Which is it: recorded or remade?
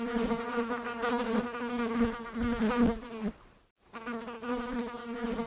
recorded